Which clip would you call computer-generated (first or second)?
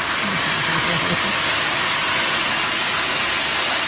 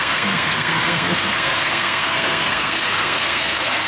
second